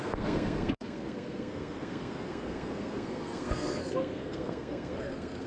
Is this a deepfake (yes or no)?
yes